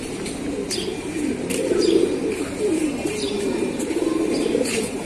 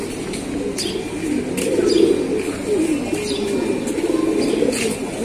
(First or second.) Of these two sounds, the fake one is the first